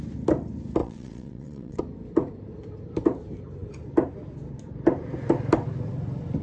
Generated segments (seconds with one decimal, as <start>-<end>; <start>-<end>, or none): 0.8-1.8